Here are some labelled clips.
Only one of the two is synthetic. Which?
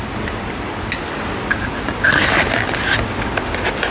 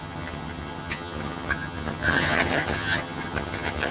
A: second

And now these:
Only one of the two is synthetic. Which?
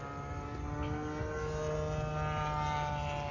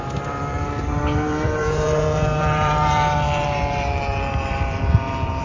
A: second